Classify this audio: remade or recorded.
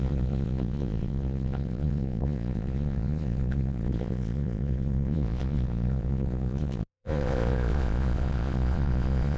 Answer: remade